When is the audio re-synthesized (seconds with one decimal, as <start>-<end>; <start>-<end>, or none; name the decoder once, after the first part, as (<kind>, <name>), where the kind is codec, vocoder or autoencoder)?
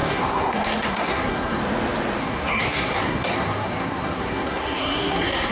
0.0-1.6 (codec, SNAC); 2.2-5.5